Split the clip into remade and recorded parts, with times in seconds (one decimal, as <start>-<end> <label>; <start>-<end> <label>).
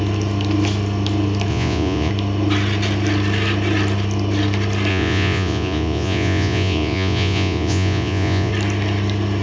0.0-1.5 recorded; 1.5-2.1 remade; 2.1-4.9 recorded; 4.9-8.5 remade; 8.5-9.4 recorded